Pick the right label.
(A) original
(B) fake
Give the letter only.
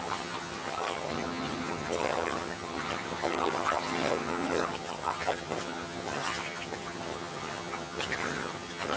B